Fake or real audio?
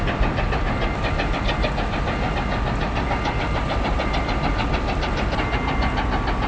real